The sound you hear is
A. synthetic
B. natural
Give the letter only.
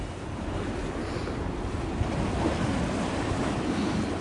B